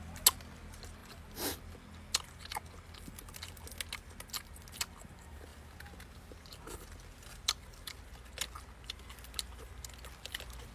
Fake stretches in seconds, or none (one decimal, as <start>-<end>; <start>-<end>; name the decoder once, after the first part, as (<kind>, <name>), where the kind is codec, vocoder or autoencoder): 1.0-1.6 (vocoder, BigVGAN v2)